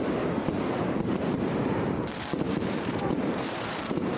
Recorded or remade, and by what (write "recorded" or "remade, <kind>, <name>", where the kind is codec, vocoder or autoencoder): remade, vocoder, BigVGAN v2